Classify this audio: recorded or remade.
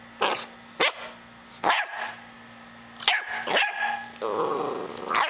recorded